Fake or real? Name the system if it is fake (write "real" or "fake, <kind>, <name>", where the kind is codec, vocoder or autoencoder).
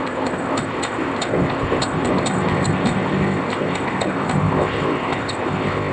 fake, codec, ZipCodec